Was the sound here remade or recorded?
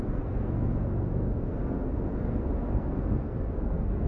remade